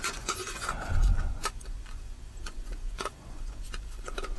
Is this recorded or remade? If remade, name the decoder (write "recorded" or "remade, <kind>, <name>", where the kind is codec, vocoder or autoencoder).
remade, vocoder, Vocos